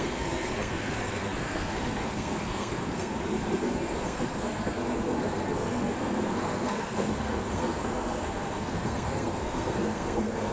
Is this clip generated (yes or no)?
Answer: yes